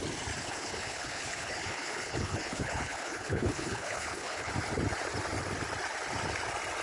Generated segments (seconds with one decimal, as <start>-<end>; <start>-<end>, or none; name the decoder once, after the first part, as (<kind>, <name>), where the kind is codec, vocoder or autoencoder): 0.4-4.5 (codec, HILCodec)

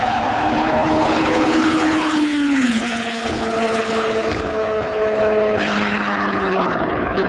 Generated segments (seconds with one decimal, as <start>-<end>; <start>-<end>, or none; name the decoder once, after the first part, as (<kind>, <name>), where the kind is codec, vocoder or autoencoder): 0.0-7.3 (codec, HILCodec)